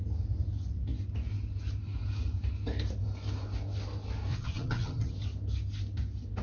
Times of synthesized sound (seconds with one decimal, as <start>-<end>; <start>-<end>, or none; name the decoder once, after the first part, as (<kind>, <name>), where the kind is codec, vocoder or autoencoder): 4.3-5.1 (vocoder, HiFi-GAN)